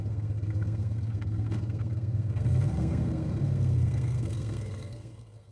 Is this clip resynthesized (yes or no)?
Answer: yes